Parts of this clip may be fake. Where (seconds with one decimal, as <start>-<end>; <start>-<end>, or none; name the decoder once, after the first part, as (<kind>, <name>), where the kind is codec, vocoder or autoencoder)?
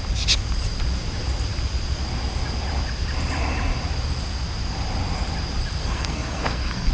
5.8-6.9 (codec, SNAC)